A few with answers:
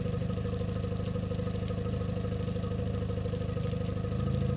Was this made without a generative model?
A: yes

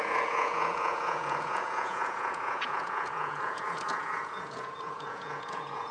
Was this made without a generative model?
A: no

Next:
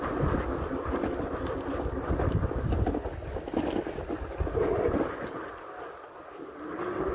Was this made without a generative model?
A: yes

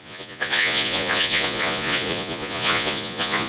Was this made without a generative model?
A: no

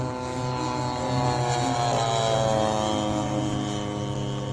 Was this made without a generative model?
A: yes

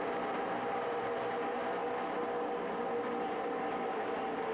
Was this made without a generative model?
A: yes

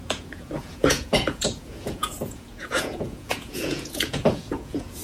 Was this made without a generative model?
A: no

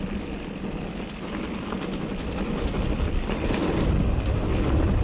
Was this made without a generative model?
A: yes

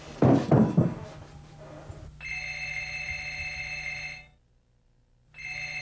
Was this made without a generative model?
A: yes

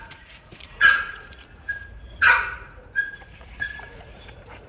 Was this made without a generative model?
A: no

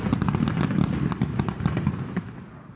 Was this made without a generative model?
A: yes